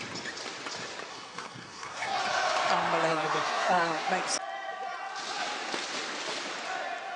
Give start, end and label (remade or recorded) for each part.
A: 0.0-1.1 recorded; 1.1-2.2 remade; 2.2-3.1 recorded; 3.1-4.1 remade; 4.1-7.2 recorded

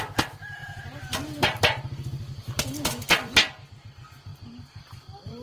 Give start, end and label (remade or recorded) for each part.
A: 0.0-0.6 recorded; 0.6-1.6 remade; 1.6-4.3 recorded; 4.3-5.0 remade; 5.0-5.4 recorded

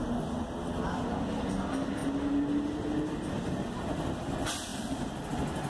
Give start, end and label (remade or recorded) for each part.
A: 0.0-5.7 recorded

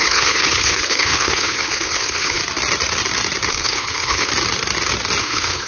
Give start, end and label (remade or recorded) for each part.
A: 0.0-2.4 remade; 2.4-3.5 recorded; 3.5-4.3 remade; 4.3-5.2 recorded; 5.2-5.7 remade

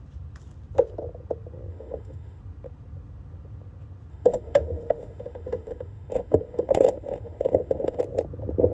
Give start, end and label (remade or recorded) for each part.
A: 0.0-1.7 recorded; 1.7-2.4 remade; 2.4-4.1 recorded; 4.1-8.0 remade; 8.0-8.7 recorded

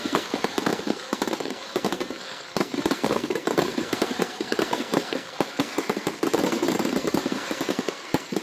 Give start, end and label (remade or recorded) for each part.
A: 0.0-8.4 remade